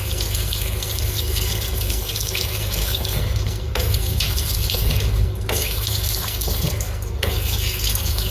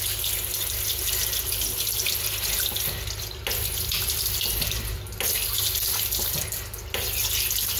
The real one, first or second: second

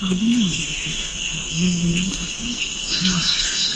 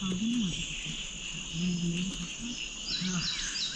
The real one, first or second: second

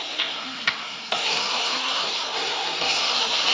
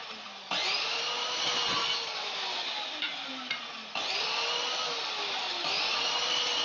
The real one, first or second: second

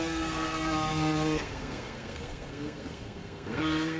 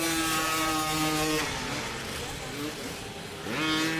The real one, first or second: second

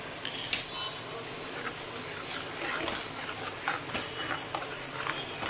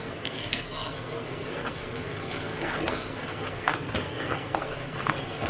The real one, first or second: first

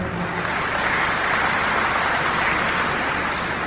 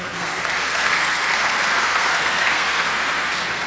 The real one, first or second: first